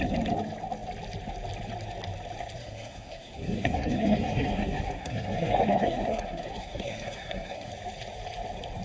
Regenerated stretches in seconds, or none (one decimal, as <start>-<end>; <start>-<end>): 2.6-7.7